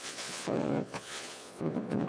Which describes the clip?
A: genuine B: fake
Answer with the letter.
B